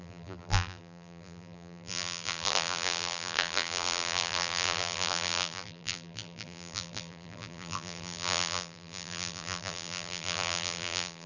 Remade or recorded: remade